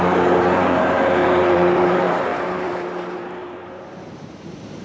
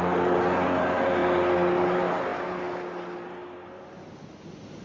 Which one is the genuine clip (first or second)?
second